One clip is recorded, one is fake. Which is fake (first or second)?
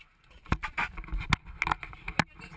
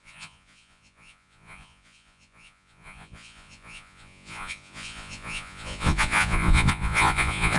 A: second